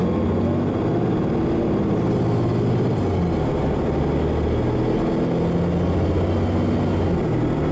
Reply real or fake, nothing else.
real